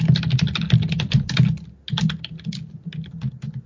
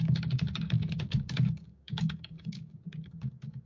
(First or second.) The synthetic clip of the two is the second